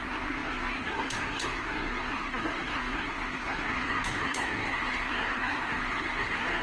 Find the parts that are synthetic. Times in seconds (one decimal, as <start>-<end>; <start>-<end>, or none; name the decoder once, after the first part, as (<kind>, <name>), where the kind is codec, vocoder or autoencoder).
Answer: 0.0-6.6 (codec, SNAC)